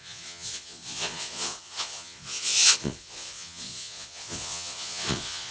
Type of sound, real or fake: fake